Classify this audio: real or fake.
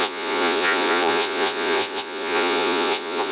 fake